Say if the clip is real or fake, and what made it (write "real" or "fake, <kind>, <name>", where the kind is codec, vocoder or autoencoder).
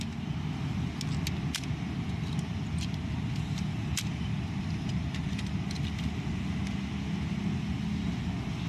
real